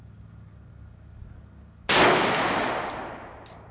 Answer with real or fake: real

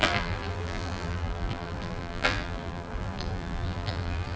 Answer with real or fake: fake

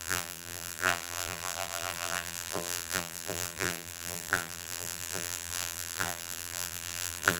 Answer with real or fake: fake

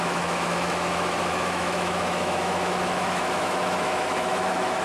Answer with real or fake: fake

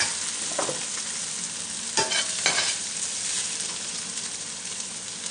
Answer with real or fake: real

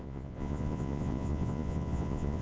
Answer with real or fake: fake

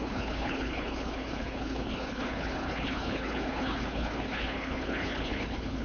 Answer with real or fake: fake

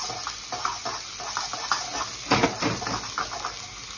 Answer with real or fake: real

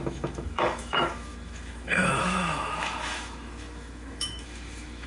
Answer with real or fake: fake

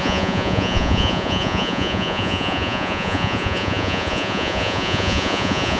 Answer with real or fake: fake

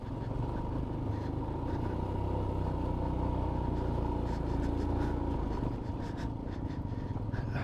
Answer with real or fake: real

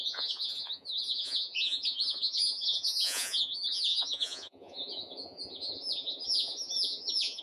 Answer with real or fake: fake